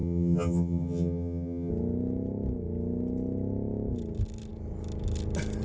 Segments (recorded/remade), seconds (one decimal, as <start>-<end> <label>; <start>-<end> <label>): 0.0-1.7 remade; 1.7-5.6 recorded